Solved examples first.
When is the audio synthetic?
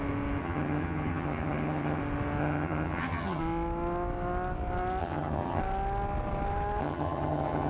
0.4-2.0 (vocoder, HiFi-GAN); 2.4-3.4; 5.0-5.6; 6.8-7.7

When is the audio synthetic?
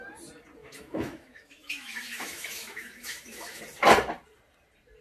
0.6-3.6 (autoencoder, DAC-VAE)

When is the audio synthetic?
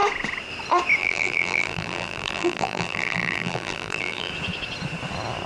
1.0-4.3 (vocoder, BigVGAN v2)